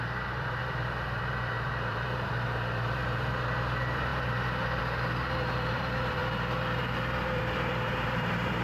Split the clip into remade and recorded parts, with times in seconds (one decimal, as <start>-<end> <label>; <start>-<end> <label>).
0.0-8.6 remade